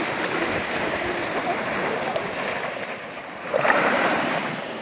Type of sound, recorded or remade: remade